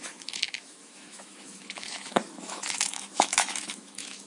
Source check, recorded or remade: remade